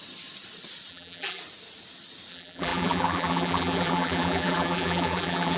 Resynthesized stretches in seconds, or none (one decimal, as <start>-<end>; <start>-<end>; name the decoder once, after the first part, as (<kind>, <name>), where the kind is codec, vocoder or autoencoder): 0.9-1.4 (vocoder, BigVGAN v2); 2.3-5.6